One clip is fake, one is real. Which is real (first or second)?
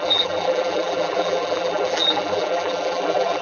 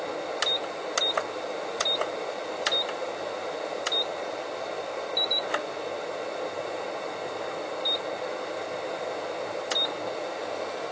second